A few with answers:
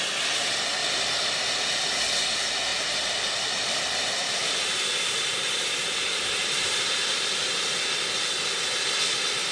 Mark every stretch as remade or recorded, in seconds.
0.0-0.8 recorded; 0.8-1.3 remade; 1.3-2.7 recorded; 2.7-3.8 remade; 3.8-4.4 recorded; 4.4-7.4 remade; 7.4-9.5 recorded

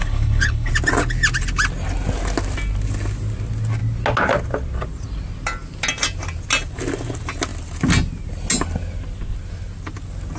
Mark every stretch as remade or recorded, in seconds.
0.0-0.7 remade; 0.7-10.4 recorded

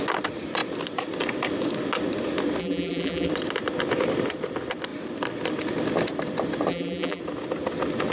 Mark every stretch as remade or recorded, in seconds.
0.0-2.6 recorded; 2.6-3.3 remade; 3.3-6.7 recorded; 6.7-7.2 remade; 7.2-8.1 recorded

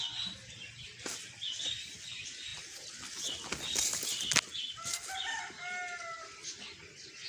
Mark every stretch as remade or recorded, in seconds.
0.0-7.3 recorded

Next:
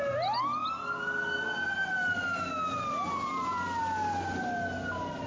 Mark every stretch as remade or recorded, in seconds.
0.0-5.3 recorded

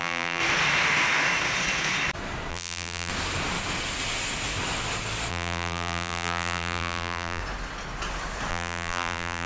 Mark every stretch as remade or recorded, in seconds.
0.0-0.4 remade; 0.4-2.5 recorded; 2.5-3.1 remade; 3.1-5.3 recorded; 5.3-7.4 remade; 7.4-8.5 recorded; 8.5-9.5 remade

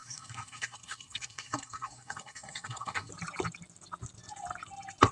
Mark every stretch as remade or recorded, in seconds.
0.0-3.1 remade; 3.1-5.1 recorded

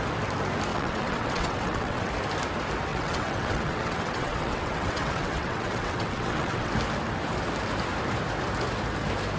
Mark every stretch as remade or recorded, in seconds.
0.0-0.7 recorded; 0.7-2.1 remade; 2.1-2.9 recorded; 2.9-6.7 remade; 6.7-9.4 recorded